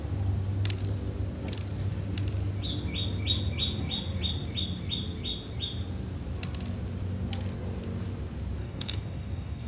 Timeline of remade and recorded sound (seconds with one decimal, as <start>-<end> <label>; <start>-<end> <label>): 0.0-8.6 recorded; 8.6-9.7 remade